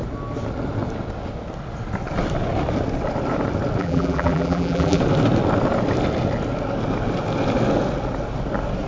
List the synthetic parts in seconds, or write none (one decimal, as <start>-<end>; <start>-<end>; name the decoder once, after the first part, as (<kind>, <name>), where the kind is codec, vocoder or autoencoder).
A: 3.8-5.0 (vocoder, BigVGAN v2)